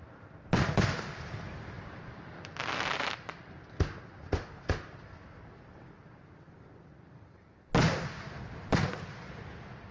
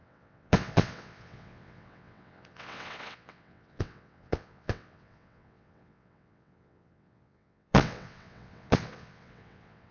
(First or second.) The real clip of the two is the first